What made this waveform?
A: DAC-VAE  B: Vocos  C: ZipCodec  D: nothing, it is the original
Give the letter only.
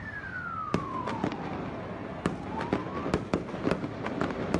D